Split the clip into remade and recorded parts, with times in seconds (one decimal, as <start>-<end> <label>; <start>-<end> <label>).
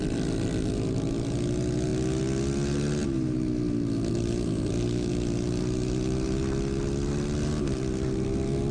0.0-8.7 recorded